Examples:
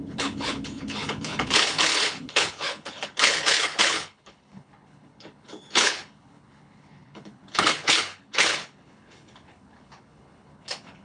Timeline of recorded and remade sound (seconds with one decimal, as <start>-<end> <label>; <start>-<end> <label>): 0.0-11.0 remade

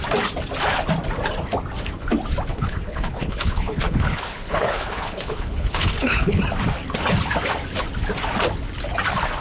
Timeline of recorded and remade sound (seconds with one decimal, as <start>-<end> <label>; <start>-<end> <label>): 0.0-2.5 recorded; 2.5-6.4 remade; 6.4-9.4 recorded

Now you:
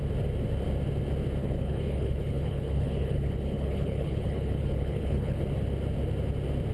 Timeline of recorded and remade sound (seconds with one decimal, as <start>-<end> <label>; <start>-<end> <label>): 0.0-1.4 recorded; 1.4-5.4 remade; 5.4-6.7 recorded